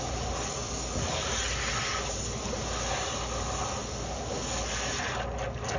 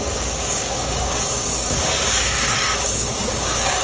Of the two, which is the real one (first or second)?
first